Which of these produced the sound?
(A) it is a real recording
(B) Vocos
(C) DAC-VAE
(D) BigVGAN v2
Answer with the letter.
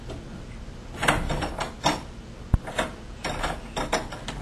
A